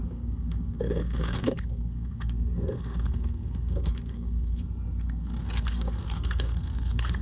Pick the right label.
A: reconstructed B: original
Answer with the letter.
A